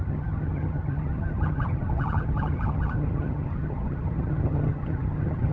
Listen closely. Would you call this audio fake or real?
fake